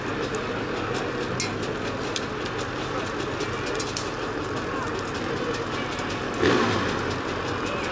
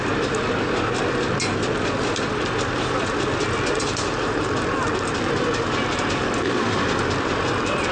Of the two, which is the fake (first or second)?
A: second